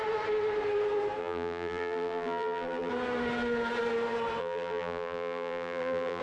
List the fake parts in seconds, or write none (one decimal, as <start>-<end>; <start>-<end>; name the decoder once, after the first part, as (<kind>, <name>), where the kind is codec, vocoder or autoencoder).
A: 1.2-2.9 (vocoder, BigVGAN v2); 4.4-6.2